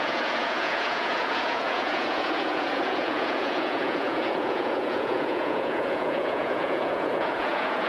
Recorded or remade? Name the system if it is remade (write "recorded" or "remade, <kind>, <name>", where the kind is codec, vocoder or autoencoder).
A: remade, vocoder, Vocos